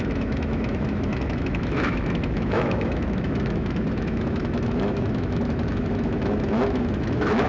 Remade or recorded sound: remade